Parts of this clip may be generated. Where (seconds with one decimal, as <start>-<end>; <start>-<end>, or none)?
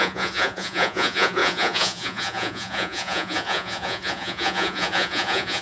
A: 0.0-5.6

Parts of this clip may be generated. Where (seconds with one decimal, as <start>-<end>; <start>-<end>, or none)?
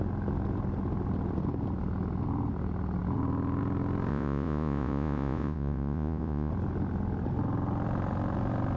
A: 4.1-6.5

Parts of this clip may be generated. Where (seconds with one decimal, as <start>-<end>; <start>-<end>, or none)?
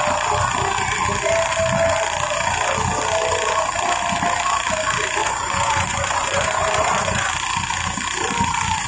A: 5.2-7.3